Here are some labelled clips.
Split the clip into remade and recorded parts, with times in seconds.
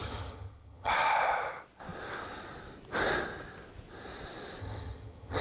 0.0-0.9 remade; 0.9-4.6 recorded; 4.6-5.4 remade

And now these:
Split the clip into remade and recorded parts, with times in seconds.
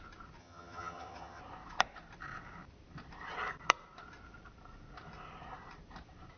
0.0-0.4 recorded; 0.4-1.4 remade; 1.4-6.4 recorded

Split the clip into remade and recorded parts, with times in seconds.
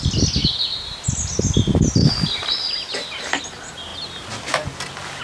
0.0-5.2 recorded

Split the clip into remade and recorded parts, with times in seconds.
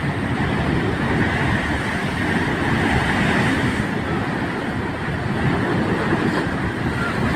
0.0-7.4 recorded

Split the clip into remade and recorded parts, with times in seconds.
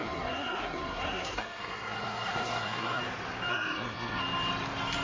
0.0-3.0 remade; 3.0-3.5 recorded; 3.5-4.2 remade; 4.2-5.0 recorded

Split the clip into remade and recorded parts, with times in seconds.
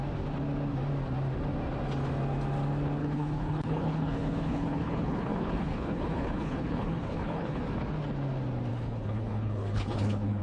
0.0-3.0 recorded; 3.0-7.6 remade; 7.6-8.7 recorded; 8.7-10.4 remade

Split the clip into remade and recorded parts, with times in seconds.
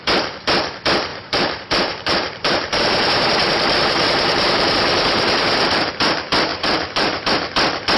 0.0-1.1 recorded; 1.1-5.9 remade; 5.9-6.5 recorded; 6.5-7.3 remade; 7.3-8.0 recorded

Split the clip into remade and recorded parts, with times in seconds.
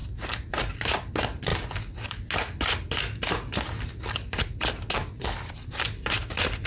0.0-6.7 recorded